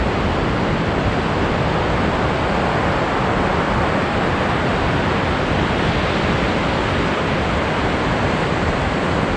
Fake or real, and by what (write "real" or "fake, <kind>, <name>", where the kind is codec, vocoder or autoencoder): real